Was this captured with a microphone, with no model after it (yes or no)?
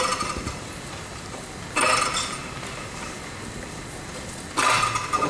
yes